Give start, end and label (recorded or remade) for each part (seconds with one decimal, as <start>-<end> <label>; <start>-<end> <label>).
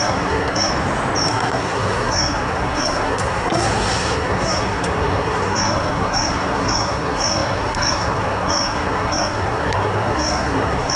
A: 0.0-0.7 remade; 0.7-1.3 recorded; 1.3-11.0 remade